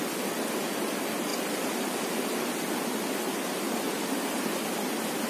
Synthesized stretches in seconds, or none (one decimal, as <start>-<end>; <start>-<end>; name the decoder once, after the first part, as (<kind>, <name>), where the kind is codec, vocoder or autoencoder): none